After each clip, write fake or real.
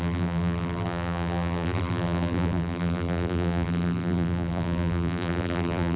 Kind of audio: fake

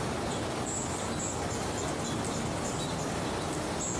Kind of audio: real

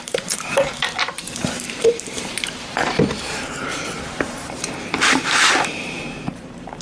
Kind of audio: fake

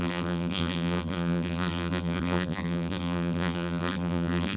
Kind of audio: fake